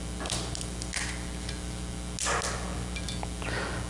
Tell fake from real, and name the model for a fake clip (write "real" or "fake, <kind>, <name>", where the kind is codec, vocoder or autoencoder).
real